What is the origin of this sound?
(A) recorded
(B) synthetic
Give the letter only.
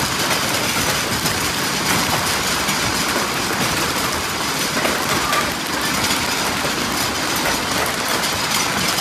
A